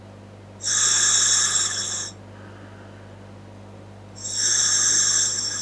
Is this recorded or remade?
recorded